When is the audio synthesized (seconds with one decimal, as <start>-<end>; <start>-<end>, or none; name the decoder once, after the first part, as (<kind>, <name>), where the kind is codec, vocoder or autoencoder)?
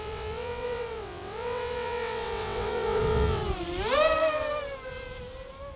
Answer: 0.0-3.4 (vocoder, WaveNeXt)